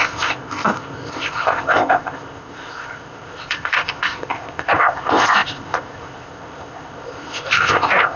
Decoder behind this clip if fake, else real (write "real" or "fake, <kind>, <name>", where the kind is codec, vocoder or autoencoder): fake, codec, ZipCodec